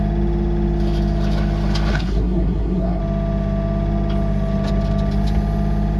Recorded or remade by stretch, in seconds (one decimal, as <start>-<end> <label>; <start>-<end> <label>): 0.0-1.9 recorded; 1.9-3.0 remade; 3.0-6.0 recorded